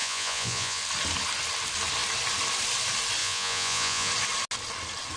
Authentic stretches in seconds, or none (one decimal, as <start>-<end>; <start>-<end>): 0.8-3.2; 4.1-5.2